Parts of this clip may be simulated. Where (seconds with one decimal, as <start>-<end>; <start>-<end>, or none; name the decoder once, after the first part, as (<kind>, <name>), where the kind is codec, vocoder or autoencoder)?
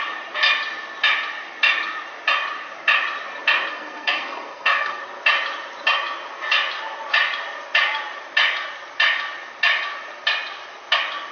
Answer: 3.7-5.0 (codec, SNAC)